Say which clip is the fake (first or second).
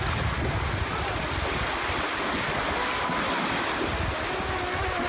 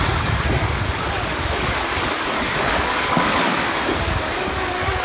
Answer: second